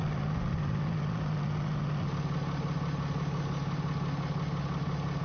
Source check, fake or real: real